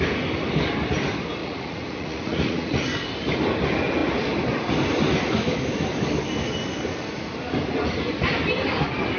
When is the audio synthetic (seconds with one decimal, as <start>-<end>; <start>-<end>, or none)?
1.4-2.8